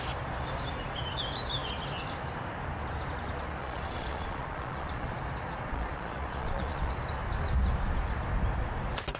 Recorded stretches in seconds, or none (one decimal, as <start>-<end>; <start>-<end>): 0.0-3.6; 5.1-5.7; 6.9-9.2